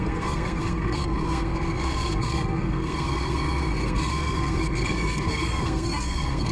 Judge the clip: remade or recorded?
remade